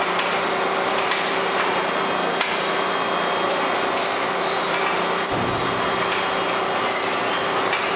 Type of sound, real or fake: real